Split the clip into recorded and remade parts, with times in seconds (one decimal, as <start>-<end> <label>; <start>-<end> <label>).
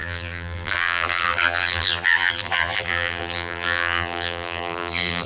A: 0.0-5.3 remade